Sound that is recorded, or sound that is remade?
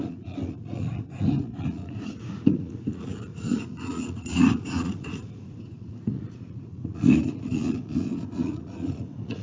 remade